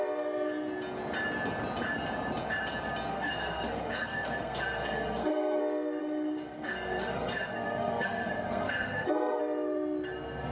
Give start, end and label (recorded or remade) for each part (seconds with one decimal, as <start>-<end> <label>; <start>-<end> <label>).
0.0-3.1 recorded; 3.1-5.6 remade; 5.6-6.0 recorded; 6.0-9.4 remade; 9.4-10.5 recorded